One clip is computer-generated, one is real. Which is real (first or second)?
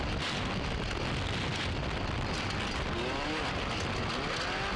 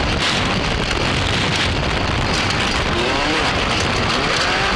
first